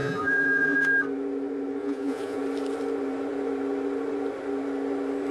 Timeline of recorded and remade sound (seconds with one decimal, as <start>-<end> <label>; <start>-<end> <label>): 0.0-0.8 remade; 0.8-1.8 recorded; 1.8-2.4 remade; 2.4-5.3 recorded